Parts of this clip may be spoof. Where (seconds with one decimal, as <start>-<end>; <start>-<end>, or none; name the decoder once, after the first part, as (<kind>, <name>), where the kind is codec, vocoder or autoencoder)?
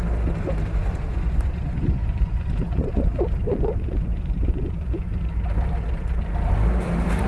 0.8-5.2 (vocoder, Vocos)